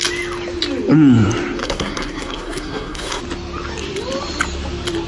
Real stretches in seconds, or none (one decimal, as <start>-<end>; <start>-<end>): 0.0-1.6; 3.2-5.1